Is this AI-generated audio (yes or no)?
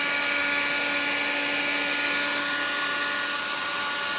no